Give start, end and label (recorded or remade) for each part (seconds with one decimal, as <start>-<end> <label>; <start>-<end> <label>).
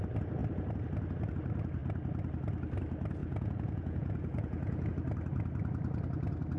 0.0-3.2 recorded; 3.2-4.9 remade; 4.9-6.6 recorded